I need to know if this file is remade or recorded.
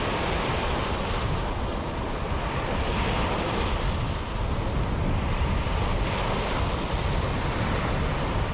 recorded